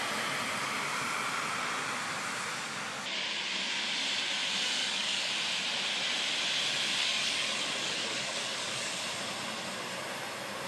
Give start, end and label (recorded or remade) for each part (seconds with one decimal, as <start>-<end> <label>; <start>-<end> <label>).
0.0-4.8 recorded; 4.8-5.3 remade; 5.3-7.0 recorded; 7.0-8.9 remade; 8.9-10.7 recorded